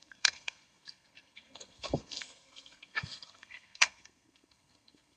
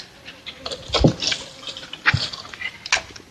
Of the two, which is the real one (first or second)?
second